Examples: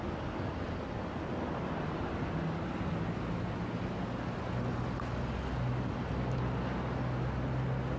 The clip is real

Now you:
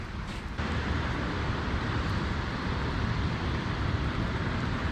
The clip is fake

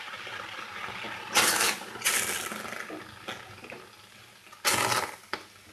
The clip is real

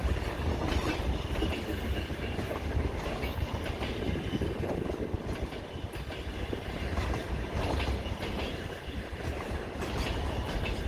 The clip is real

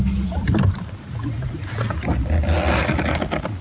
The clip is real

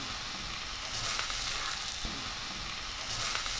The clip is real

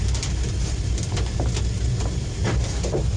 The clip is real